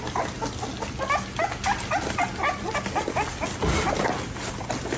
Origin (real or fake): real